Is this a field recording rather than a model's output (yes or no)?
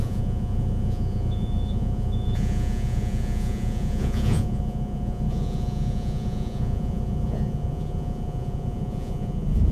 no